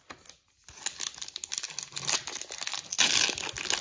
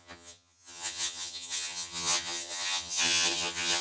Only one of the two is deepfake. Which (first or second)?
second